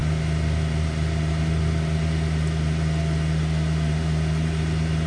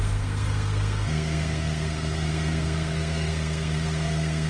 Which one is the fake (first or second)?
second